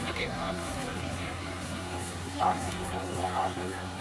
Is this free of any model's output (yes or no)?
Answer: no